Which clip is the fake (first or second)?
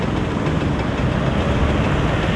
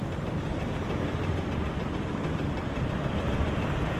second